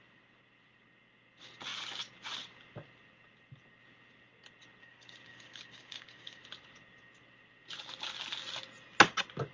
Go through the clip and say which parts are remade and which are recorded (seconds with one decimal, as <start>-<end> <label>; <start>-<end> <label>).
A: 0.0-4.8 recorded; 4.8-6.4 remade; 6.4-9.5 recorded